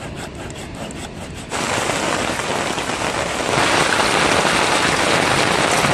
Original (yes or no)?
yes